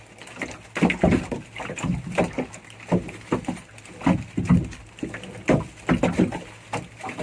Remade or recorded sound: recorded